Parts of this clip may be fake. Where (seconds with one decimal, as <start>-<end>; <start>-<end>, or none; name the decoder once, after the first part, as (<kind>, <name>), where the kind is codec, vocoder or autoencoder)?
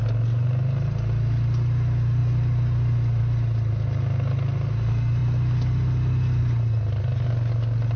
none